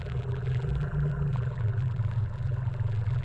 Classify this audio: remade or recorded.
remade